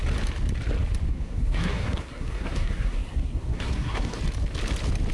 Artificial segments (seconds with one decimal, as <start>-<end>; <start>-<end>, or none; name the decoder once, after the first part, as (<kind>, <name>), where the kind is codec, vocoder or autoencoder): 1.1-4.2 (codec, SNAC)